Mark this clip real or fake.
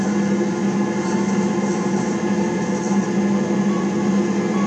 real